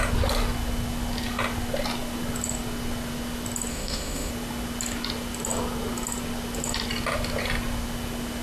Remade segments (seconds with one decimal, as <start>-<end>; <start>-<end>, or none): 3.7-4.3